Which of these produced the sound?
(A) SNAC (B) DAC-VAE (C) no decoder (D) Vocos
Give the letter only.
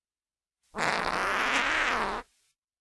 C